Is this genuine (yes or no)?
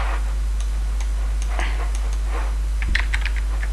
yes